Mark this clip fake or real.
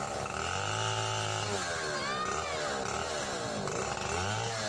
real